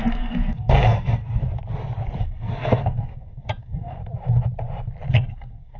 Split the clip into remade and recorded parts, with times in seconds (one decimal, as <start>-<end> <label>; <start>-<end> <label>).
0.0-1.4 remade; 1.4-2.2 recorded; 2.2-4.0 remade; 4.0-5.1 recorded; 5.1-5.8 remade